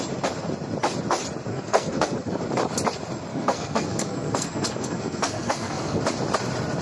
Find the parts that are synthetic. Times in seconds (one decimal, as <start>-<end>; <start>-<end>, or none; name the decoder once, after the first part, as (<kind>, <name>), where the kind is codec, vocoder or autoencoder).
1.5-2.4 (codec, SNAC); 3.3-6.0